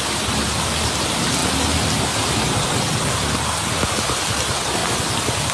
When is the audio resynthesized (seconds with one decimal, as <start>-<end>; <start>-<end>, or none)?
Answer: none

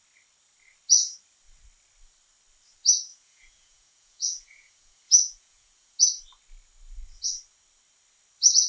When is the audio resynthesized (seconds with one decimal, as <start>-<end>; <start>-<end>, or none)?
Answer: 3.1-6.0

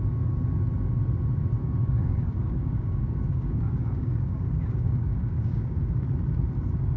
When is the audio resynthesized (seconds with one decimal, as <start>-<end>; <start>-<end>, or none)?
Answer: 1.6-5.8